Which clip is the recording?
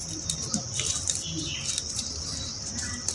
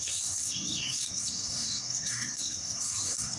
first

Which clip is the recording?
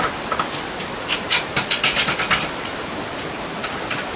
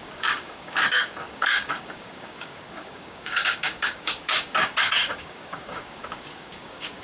first